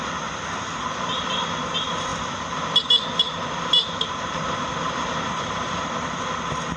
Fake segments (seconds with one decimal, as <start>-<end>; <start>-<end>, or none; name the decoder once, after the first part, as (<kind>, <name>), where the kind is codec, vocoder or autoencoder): none